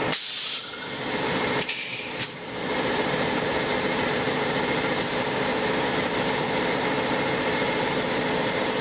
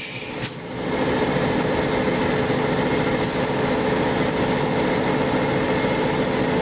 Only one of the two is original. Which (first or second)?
second